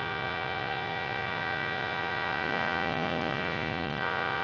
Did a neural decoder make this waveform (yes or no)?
yes